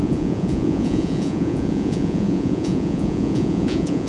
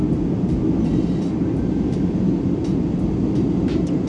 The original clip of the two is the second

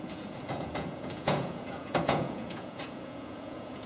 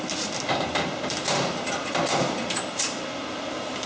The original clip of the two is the second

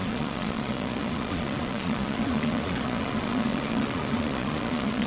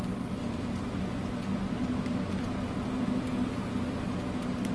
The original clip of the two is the second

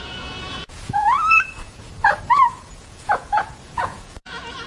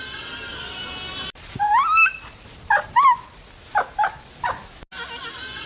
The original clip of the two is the second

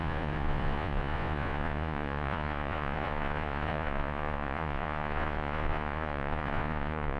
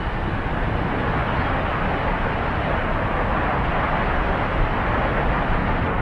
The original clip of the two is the second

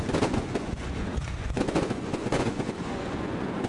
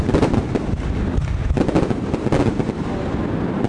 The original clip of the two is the second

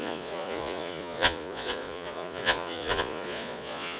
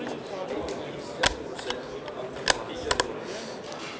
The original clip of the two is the second